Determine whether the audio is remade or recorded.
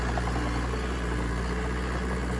recorded